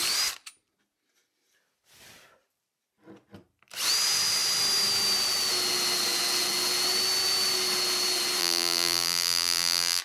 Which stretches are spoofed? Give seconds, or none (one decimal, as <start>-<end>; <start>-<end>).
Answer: 8.4-10.0